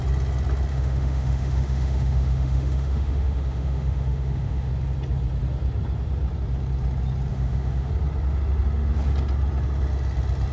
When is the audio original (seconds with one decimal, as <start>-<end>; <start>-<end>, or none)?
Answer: 0.0-0.7; 4.7-7.3; 7.9-10.5